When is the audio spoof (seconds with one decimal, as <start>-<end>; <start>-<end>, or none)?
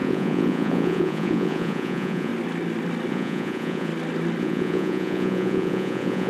0.0-2.3; 3.1-3.9; 4.4-6.3